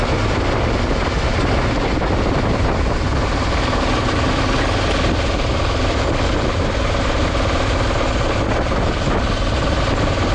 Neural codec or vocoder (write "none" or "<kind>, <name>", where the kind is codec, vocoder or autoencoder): none